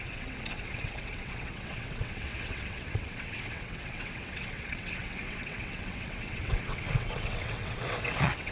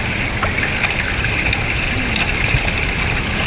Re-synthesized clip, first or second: first